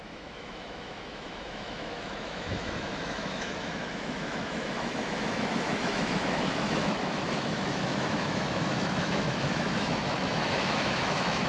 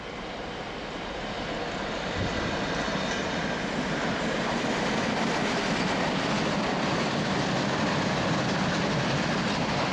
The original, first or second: second